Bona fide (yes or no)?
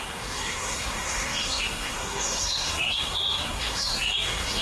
no